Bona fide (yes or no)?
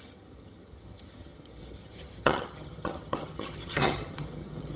no